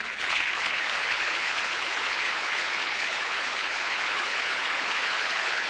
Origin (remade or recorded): remade